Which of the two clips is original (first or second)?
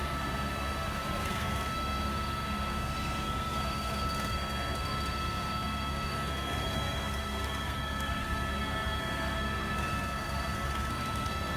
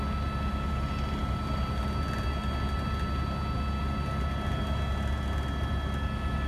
second